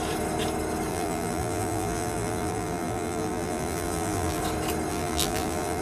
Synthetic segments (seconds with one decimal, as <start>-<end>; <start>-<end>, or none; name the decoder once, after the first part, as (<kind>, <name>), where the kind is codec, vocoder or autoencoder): 0.9-4.4 (vocoder, BigVGAN v2); 4.9-5.8